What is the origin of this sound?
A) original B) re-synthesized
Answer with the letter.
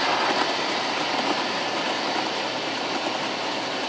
A